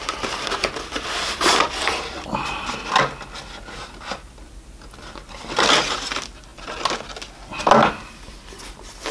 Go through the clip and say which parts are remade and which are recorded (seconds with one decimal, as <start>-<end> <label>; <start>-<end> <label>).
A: 0.0-9.1 recorded